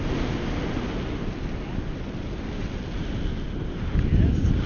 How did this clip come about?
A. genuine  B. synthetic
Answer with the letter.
A